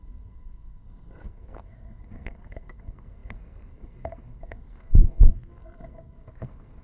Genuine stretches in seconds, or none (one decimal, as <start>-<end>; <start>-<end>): none